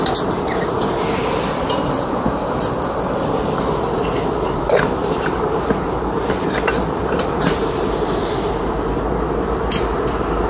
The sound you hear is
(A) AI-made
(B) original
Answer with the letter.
A